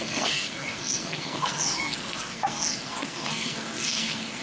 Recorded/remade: remade